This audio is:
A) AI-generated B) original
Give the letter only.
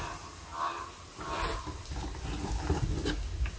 B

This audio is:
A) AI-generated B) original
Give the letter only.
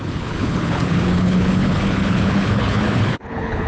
A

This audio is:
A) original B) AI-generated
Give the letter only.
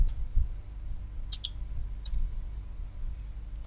A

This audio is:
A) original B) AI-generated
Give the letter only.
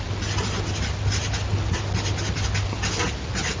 A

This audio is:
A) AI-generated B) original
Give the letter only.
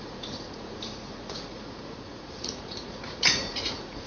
A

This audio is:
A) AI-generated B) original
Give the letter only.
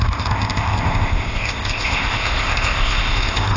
A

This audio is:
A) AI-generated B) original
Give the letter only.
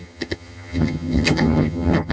A